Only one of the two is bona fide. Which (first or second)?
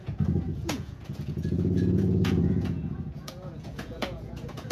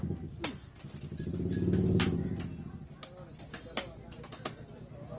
second